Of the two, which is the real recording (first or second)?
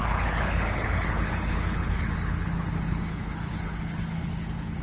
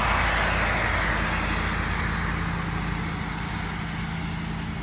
second